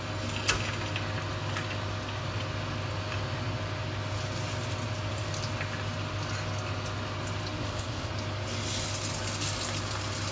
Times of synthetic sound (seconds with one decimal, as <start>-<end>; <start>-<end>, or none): 7.6-8.1